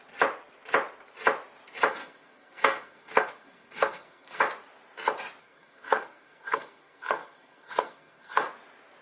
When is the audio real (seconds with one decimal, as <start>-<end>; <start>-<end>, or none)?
0.0-1.9; 4.4-5.4; 8.4-9.0